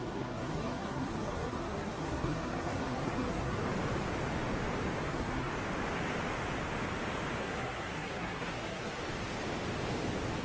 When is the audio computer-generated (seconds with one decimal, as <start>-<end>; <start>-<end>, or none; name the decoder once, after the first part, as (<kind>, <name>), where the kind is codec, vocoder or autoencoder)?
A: 0.0-3.6 (codec, SNAC); 5.1-5.5; 7.4-9.0